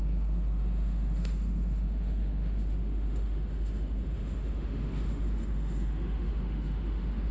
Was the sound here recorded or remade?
remade